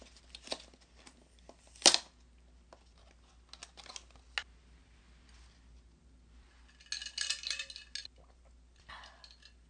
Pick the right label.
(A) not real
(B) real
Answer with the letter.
B